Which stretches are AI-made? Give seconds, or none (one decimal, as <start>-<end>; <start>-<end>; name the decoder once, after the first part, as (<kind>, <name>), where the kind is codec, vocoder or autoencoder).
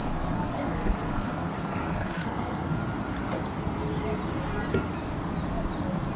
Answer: 0.0-2.7 (codec, SNAC)